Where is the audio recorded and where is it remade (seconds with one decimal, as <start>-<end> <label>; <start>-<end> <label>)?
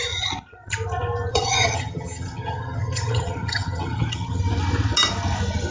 0.0-1.3 recorded; 1.3-4.4 remade; 4.4-5.7 recorded